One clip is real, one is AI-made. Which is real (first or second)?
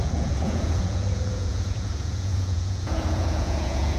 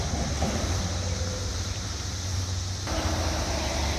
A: second